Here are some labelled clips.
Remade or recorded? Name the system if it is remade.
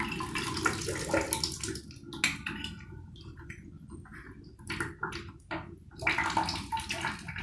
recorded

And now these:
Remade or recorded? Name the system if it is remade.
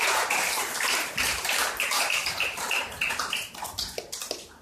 remade, vocoder, BigVGAN v2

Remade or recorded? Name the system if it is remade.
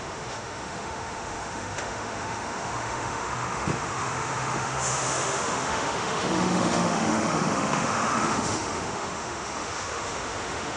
remade, autoencoder, DAC-VAE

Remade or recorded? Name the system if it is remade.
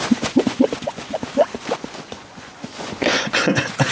remade, vocoder, Vocos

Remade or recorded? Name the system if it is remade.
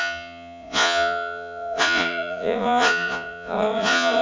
remade, vocoder, Vocos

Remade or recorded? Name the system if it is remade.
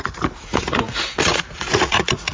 remade, vocoder, Vocos